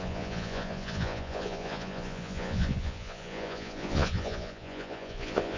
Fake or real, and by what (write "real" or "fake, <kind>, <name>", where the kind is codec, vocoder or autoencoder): fake, vocoder, Vocos